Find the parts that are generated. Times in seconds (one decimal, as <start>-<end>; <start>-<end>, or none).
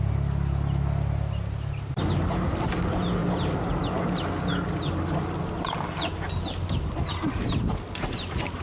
none